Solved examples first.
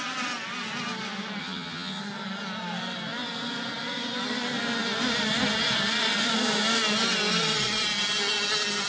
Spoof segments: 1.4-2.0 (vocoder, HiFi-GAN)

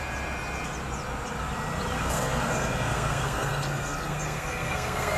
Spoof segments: 2.0-5.2 (codec, SNAC)